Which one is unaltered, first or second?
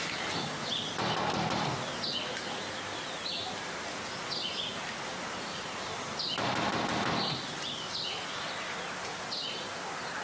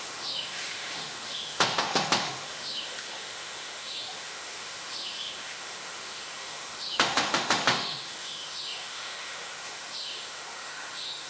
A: first